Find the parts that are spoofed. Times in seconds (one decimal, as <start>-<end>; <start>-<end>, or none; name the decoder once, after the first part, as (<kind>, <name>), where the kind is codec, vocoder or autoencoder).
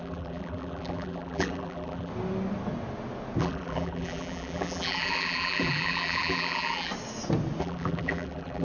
0.0-2.1 (vocoder, BigVGAN v2); 3.4-6.9; 7.6-8.6